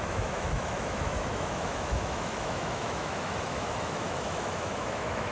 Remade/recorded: remade